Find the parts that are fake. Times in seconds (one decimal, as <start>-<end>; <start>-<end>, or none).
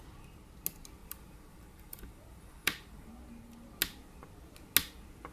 1.0-3.1